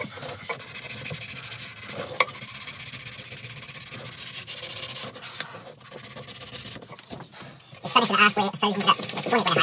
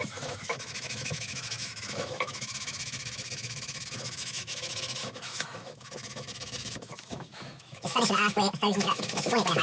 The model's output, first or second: second